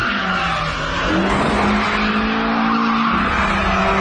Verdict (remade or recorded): recorded